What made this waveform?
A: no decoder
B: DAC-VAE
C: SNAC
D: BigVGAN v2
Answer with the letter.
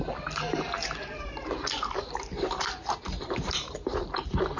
D